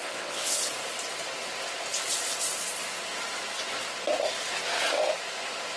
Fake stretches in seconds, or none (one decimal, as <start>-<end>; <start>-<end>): 0.0-0.7